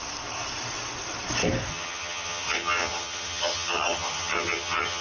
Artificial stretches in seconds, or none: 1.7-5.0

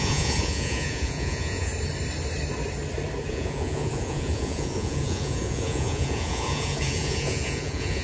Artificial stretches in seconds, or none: 0.0-1.7; 3.3-8.0

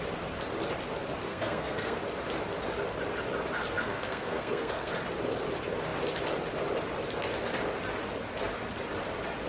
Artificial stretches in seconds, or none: 1.3-2.0; 3.8-4.9

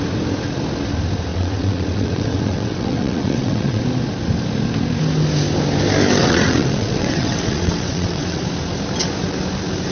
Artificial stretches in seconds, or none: 1.3-3.8; 6.2-8.4

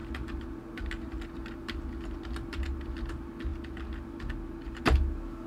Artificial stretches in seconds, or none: none